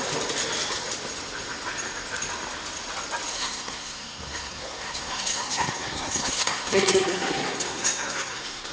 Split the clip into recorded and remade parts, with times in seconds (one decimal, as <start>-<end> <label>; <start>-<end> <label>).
0.0-3.3 recorded; 3.3-8.7 remade